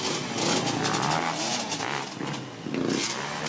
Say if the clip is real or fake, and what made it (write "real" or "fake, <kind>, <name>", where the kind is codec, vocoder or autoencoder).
real